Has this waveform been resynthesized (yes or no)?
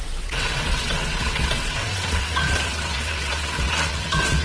yes